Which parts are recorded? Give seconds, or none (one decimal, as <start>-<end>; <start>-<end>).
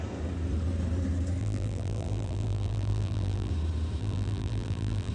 0.0-1.4; 3.5-4.0